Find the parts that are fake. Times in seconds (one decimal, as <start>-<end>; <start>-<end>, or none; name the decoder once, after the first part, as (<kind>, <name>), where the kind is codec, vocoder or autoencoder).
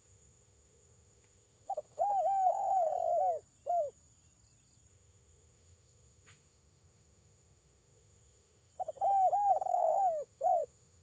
0.0-2.9 (autoencoder, DAC-VAE); 4.9-8.7; 9.7-11.0